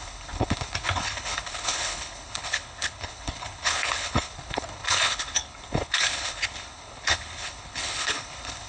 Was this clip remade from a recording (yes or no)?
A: yes